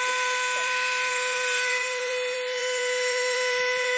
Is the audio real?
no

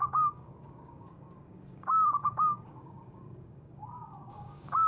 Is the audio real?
no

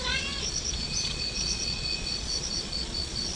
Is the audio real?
no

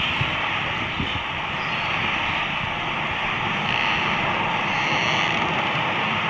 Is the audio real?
no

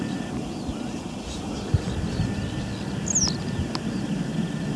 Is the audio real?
yes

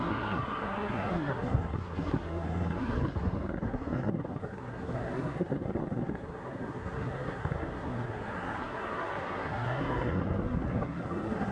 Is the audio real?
no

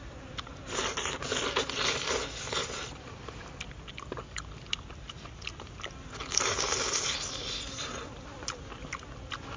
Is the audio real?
yes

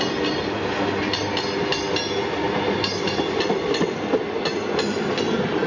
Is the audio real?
yes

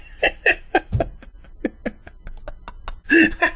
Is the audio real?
yes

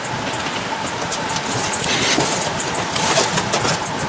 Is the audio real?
yes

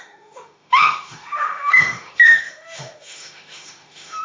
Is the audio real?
no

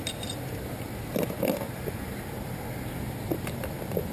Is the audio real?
no